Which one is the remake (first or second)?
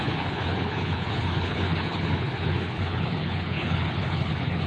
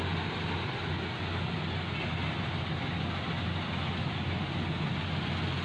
first